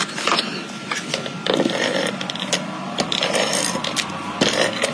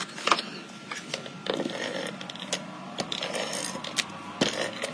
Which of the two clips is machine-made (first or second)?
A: first